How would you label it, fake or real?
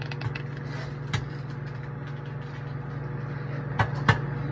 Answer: real